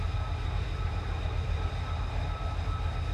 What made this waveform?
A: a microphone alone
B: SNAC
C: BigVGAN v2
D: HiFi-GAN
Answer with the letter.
A